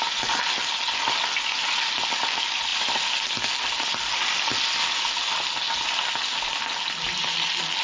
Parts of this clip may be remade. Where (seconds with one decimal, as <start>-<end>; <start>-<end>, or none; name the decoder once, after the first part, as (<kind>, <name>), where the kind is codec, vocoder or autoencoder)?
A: none